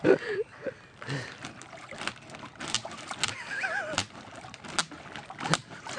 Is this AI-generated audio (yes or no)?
no